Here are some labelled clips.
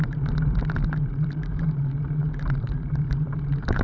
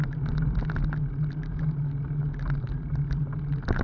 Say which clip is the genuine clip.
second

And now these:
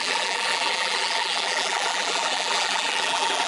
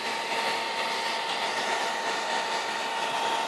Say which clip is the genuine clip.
second